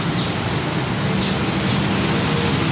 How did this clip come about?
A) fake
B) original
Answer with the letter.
B